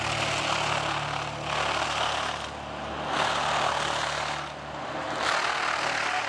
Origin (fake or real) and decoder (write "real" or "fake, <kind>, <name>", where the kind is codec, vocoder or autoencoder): real